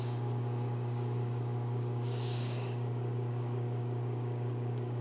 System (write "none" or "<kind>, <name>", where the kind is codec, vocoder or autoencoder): codec, DAC